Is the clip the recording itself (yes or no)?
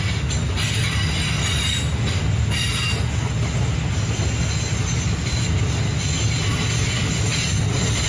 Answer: yes